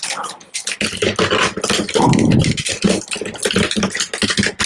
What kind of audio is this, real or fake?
real